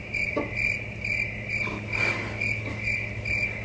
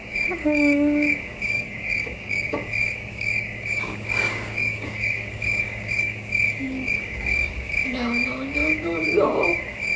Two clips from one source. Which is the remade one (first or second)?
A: second